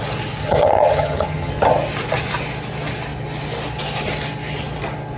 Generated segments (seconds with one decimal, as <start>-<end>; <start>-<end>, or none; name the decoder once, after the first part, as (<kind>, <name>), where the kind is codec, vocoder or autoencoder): 0.4-1.5 (vocoder, HiFi-GAN)